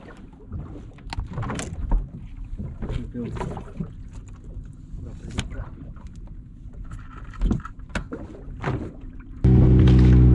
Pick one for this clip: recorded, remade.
recorded